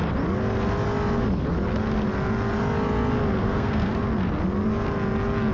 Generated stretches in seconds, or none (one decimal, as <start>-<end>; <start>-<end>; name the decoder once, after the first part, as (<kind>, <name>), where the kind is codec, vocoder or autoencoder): 3.4-3.9 (codec, SNAC)